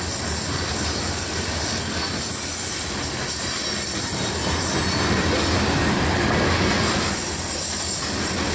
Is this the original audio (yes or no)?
yes